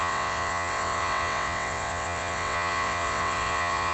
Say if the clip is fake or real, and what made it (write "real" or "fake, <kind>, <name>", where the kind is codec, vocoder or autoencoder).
fake, vocoder, WaveNeXt